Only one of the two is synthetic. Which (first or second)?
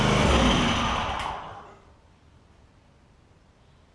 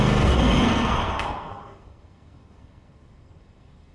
second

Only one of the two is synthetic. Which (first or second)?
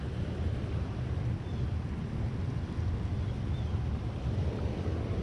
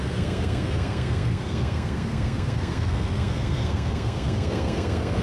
second